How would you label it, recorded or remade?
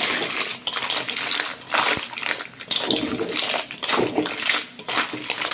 recorded